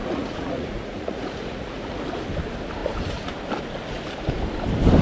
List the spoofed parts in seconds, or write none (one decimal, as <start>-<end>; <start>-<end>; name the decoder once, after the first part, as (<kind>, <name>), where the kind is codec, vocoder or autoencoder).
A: 0.0-2.0 (vocoder, Vocos)